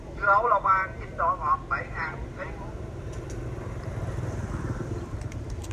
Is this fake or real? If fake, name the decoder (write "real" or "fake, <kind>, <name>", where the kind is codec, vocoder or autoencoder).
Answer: fake, vocoder, BigVGAN v2